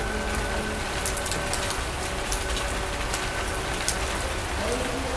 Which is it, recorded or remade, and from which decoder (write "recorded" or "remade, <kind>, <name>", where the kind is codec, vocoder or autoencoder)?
recorded